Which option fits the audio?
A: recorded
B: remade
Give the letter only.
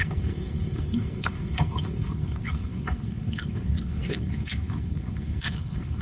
B